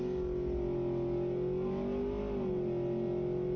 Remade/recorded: recorded